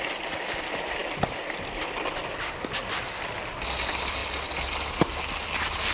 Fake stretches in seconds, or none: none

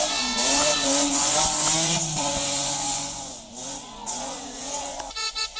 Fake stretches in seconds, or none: 0.0-5.6